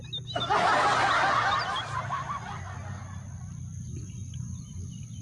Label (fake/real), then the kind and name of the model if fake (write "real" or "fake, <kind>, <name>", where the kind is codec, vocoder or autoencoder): real